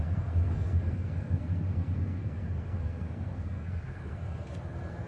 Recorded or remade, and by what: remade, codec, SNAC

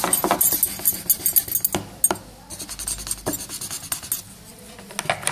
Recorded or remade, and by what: recorded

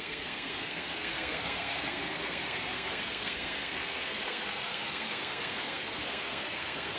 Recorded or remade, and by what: remade, codec, SNAC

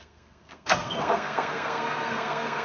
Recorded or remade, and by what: remade, codec, SNAC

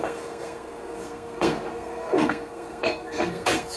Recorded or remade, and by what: remade, codec, SNAC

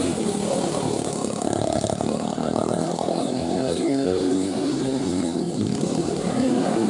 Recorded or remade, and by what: remade, codec, SNAC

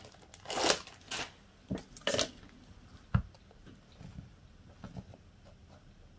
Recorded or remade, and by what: recorded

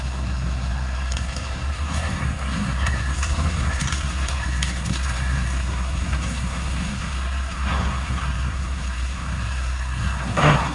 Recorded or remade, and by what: remade, codec, SNAC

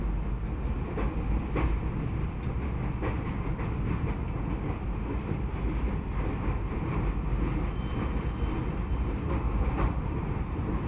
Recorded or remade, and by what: recorded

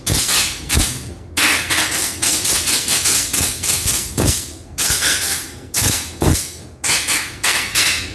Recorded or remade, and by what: remade, codec, SNAC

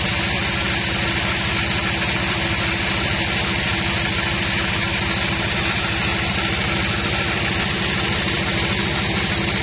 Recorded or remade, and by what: recorded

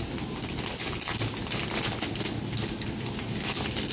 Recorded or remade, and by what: recorded